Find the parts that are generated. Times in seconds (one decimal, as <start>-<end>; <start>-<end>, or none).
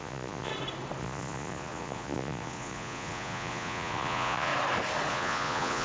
0.0-0.5; 1.0-4.5; 5.1-5.8